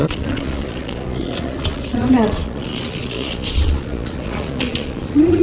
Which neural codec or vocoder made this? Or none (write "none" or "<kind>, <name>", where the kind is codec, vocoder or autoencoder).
vocoder, Vocos